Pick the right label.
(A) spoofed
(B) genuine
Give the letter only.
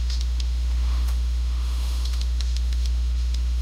A